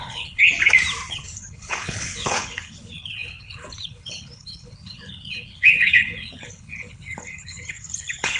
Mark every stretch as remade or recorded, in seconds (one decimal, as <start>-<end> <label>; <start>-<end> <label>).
0.0-0.4 remade; 0.4-1.1 recorded; 1.1-8.4 remade